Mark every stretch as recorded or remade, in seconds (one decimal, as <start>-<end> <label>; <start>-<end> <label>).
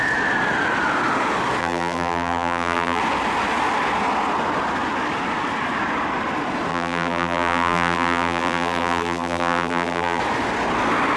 0.0-1.6 recorded; 1.6-3.0 remade; 3.0-6.7 recorded; 6.7-10.2 remade; 10.2-11.2 recorded